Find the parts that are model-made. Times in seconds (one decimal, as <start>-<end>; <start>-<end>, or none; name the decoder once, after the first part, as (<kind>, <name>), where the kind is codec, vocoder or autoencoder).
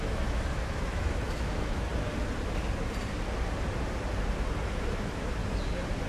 0.0-1.9 (autoencoder, DAC-VAE); 4.7-5.4